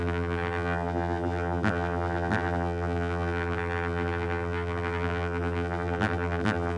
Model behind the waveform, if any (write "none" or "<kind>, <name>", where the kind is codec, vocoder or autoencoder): vocoder, BigVGAN v2